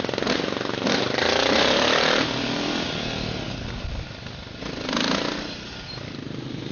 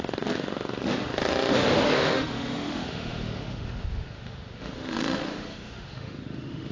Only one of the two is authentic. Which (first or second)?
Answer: first